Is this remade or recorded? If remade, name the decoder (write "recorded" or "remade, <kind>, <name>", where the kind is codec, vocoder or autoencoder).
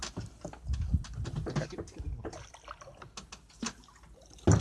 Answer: recorded